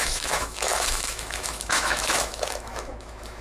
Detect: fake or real fake